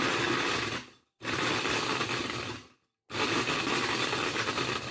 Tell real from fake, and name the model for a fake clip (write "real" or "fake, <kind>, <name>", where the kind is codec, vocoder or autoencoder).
real